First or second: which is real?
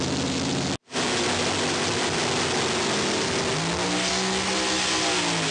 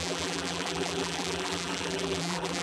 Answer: first